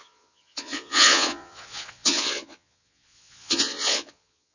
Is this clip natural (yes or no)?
no